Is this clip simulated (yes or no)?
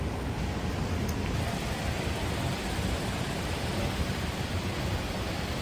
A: no